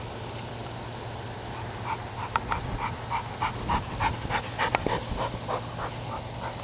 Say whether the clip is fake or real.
real